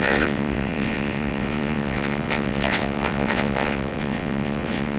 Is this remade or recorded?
remade